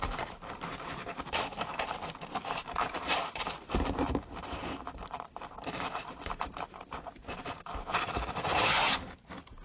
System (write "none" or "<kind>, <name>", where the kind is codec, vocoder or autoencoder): vocoder, BigVGAN v2